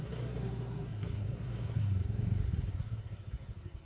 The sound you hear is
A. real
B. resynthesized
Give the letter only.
B